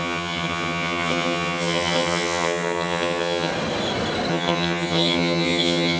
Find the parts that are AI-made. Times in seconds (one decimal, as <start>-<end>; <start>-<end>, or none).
0.0-3.5; 4.3-6.0